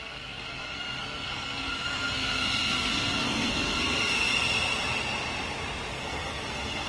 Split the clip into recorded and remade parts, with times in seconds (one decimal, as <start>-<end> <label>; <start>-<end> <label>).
0.0-4.3 remade; 4.3-5.9 recorded; 5.9-6.9 remade